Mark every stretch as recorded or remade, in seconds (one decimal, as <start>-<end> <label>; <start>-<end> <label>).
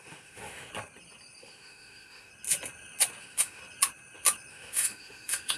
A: 0.0-0.7 remade; 0.7-1.4 recorded; 1.4-2.3 remade; 2.3-3.2 recorded; 3.2-3.6 remade; 3.6-4.5 recorded; 4.5-5.6 remade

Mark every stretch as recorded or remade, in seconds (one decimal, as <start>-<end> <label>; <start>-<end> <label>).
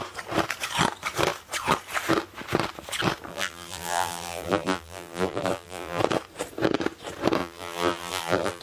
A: 0.0-3.3 recorded; 3.3-6.0 remade; 6.0-7.4 recorded; 7.4-8.6 remade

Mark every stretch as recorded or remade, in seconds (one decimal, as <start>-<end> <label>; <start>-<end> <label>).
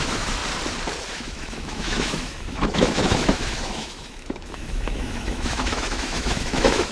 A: 0.0-0.4 remade; 0.4-1.1 recorded; 1.1-6.9 remade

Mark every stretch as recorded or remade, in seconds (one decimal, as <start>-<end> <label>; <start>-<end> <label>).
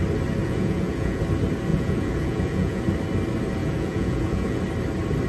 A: 0.0-0.4 recorded; 0.4-1.2 remade; 1.2-1.7 recorded; 1.7-2.8 remade; 2.8-3.6 recorded; 3.6-4.6 remade; 4.6-5.3 recorded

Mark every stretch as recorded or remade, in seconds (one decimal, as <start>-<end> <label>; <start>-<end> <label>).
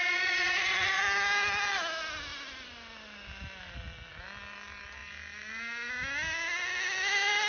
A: 0.0-1.0 remade; 1.0-7.5 recorded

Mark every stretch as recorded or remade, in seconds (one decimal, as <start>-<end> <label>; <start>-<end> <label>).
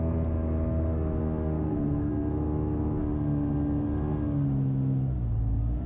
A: 0.0-1.2 recorded; 1.2-2.1 remade; 2.1-5.9 recorded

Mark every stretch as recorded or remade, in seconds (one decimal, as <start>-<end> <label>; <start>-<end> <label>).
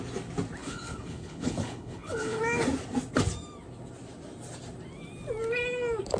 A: 0.0-0.6 recorded; 0.6-2.4 remade; 2.4-6.2 recorded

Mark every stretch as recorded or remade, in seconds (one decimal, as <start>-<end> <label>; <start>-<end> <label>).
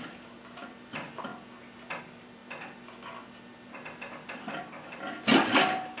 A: 0.0-1.3 remade; 1.3-2.0 recorded; 2.0-2.4 remade; 2.4-4.5 recorded; 4.5-6.0 remade